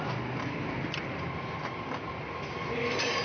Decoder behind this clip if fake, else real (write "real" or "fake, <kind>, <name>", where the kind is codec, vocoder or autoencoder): real